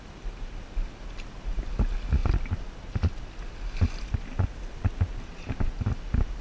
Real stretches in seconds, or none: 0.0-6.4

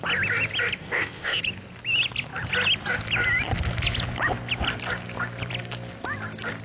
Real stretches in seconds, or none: 0.0-0.8; 1.4-6.6

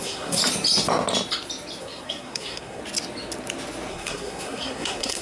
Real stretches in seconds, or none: 0.4-1.8; 2.8-3.9

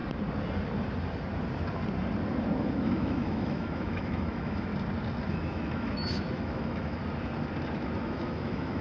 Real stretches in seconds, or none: 0.0-2.6; 4.7-5.3; 7.0-8.0

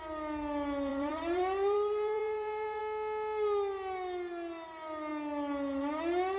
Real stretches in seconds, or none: 0.0-0.9; 2.8-6.4